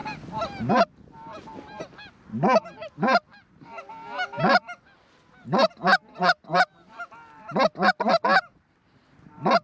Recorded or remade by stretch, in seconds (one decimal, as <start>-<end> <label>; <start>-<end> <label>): 0.0-9.6 recorded